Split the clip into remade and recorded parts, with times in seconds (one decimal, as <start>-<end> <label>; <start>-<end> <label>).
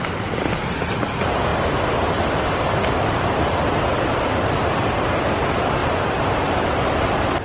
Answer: 0.0-7.4 recorded